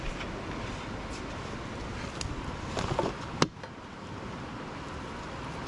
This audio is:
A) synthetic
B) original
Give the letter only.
B